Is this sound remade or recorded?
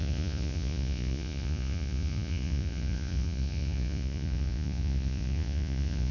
remade